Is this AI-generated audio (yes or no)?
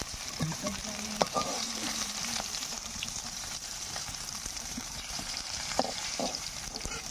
yes